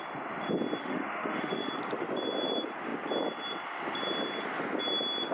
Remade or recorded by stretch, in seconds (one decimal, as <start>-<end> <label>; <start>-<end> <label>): 0.0-0.8 recorded; 0.8-1.7 remade; 1.7-5.3 recorded